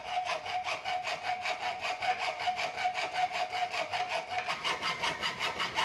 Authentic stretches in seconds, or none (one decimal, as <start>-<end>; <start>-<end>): 0.0-1.7; 2.4-5.8